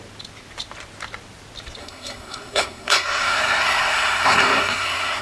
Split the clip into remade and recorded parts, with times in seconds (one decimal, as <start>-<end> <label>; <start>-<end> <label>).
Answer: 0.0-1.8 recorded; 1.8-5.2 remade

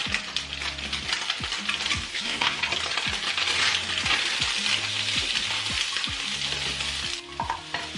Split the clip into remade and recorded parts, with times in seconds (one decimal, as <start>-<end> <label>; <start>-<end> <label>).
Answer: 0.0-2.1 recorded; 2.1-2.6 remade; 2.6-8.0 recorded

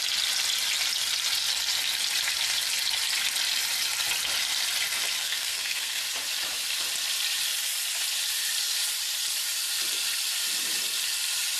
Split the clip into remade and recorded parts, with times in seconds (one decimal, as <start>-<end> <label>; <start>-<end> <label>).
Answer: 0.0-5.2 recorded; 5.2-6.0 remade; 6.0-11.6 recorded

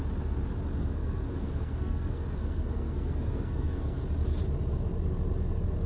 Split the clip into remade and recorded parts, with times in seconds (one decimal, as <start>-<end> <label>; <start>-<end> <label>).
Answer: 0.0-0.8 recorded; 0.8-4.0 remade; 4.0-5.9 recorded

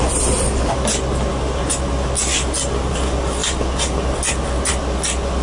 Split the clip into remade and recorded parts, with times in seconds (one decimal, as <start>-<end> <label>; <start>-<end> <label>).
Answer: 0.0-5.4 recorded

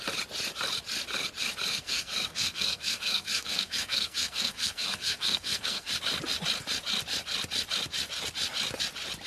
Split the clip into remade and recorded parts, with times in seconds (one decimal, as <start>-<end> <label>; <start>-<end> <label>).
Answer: 0.0-1.7 recorded; 1.7-5.9 remade; 5.9-9.3 recorded